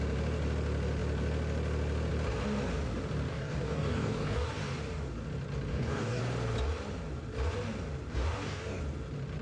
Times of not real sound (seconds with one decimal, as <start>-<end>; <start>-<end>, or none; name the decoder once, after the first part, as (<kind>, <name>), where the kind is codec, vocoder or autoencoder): 3.3-4.5 (codec, DAC); 5.7-6.2; 8.1-8.8